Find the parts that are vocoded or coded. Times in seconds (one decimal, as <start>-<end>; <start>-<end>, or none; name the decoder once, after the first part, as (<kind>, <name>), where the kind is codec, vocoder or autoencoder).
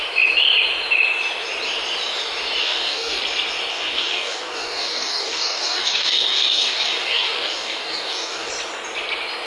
2.6-3.2 (codec, DAC); 3.7-8.5